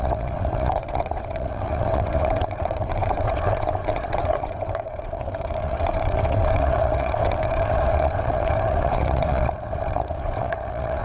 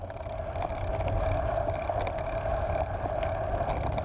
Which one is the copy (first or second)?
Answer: first